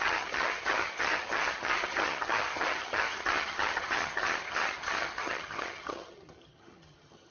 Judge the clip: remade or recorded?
remade